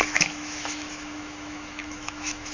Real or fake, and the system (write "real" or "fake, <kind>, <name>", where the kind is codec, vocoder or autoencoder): fake, autoencoder, DAC-VAE